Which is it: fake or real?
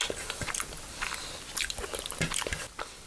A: real